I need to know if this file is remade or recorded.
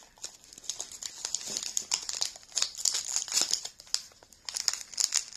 recorded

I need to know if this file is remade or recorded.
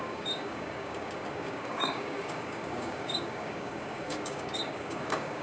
remade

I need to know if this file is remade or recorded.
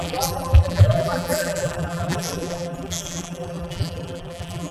remade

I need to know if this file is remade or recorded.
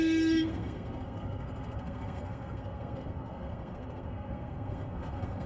remade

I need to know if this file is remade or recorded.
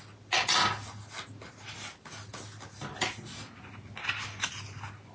recorded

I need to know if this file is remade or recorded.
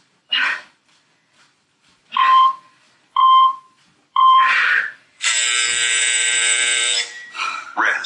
remade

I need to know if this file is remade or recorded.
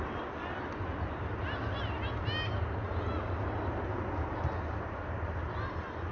recorded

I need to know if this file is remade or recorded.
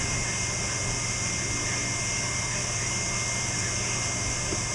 recorded